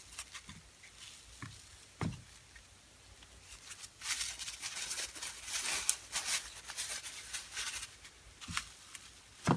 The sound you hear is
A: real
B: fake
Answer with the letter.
A